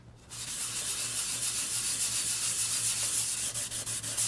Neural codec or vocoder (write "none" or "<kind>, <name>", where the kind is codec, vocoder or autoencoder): none